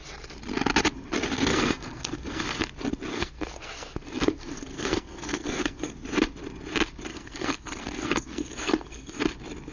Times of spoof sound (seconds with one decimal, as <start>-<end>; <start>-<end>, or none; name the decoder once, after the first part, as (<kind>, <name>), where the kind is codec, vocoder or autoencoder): 1.5-2.6 (codec, SNAC); 3.1-5.9; 7.1-9.2